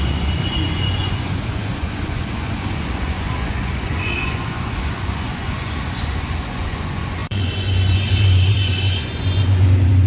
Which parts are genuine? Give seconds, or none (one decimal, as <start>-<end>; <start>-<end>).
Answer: none